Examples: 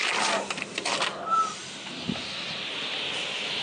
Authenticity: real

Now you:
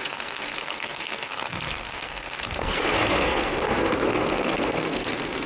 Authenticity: fake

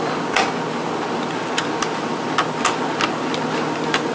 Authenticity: real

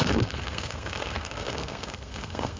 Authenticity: fake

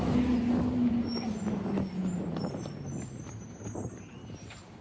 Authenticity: real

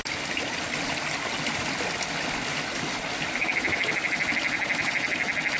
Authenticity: real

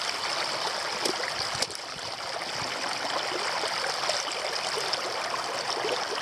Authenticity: real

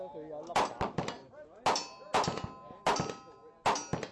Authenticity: real